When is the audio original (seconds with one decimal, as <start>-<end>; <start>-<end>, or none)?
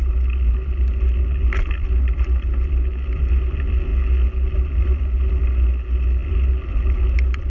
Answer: 0.0-7.5